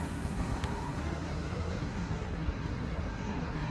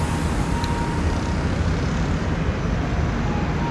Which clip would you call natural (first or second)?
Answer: second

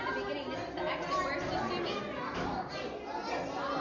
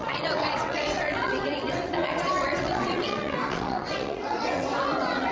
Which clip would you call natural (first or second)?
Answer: first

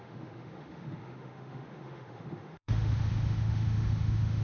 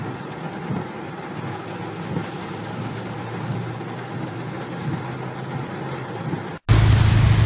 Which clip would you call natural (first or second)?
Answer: second